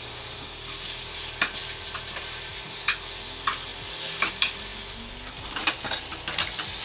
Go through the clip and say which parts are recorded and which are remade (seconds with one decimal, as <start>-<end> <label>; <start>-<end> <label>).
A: 0.0-6.8 recorded